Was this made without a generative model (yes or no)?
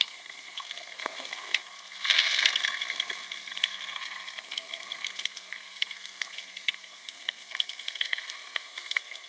no